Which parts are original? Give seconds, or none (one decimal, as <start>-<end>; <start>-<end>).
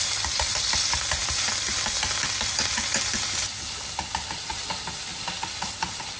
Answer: 0.0-6.2